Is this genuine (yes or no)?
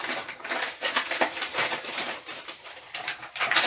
no